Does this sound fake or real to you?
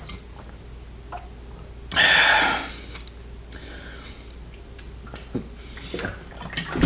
real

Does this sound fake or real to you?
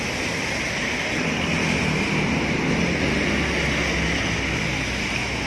real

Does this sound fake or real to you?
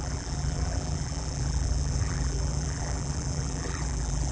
fake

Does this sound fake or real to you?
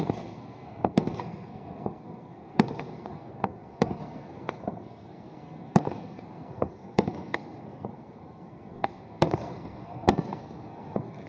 fake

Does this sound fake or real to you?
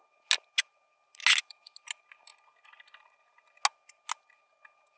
real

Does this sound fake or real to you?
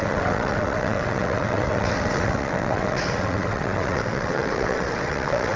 fake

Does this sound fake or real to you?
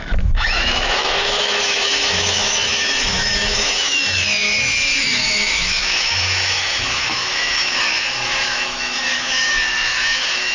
fake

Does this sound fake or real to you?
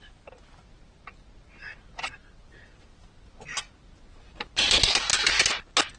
real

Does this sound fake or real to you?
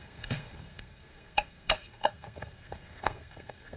fake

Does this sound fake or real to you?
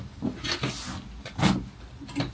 real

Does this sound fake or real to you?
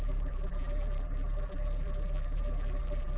fake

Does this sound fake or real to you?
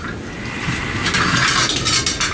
real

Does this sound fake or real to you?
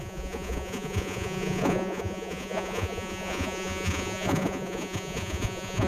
fake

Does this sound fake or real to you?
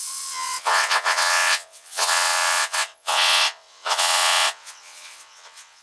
fake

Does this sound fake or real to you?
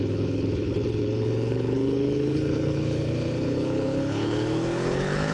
fake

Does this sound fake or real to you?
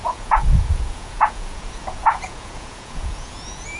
fake